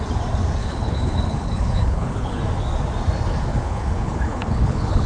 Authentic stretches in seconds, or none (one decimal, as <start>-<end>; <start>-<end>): 0.0-0.6; 2.4-3.5